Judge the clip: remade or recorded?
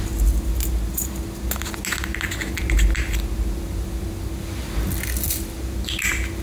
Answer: recorded